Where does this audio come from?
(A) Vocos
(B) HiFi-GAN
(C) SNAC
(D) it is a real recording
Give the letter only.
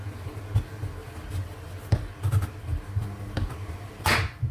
D